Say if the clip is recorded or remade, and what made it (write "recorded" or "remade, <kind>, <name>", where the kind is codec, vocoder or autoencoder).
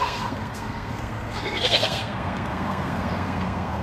remade, codec, SNAC